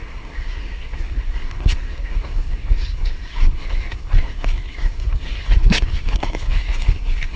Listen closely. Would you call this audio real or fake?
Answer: fake